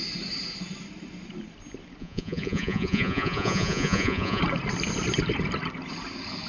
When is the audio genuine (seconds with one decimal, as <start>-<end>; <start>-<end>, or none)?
0.0-2.0; 4.4-6.5